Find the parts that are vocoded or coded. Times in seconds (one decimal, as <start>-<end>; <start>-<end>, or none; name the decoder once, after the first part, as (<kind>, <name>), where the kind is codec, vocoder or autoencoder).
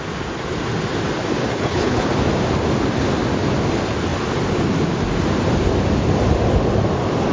1.5-2.1 (codec, HILCodec)